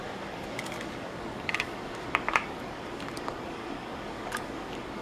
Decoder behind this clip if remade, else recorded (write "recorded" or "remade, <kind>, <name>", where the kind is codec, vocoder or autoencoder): remade, codec, DAC